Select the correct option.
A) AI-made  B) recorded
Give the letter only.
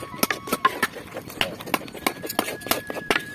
B